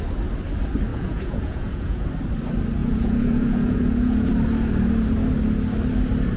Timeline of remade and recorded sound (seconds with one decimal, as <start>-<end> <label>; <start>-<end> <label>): 0.0-0.9 recorded; 0.9-2.1 remade; 2.1-2.8 recorded; 2.8-4.3 remade; 4.3-6.4 recorded